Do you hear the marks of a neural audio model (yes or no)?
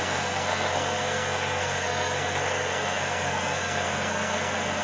yes